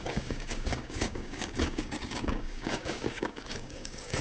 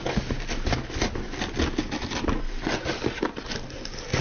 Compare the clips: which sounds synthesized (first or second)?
first